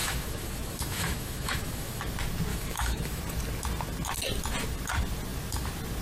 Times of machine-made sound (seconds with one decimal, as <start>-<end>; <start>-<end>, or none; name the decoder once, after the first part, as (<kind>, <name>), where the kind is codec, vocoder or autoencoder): 0.0-2.0 (autoencoder, DAC-VAE); 2.5-3.2